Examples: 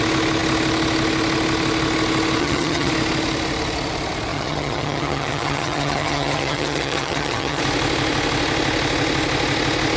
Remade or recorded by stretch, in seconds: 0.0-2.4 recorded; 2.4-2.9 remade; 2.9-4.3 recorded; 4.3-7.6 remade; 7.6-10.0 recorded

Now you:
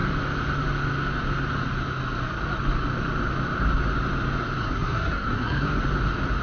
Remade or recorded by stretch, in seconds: 0.0-4.6 recorded; 4.6-5.8 remade; 5.8-6.4 recorded

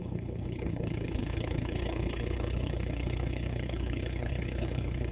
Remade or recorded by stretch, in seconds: 0.0-5.1 remade